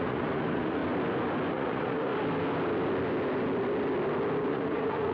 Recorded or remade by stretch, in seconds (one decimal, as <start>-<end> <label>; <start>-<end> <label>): 0.0-0.8 remade; 0.8-1.5 recorded; 1.5-2.1 remade; 2.1-4.5 recorded; 4.5-5.1 remade